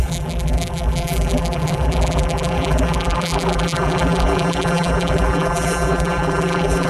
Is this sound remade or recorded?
remade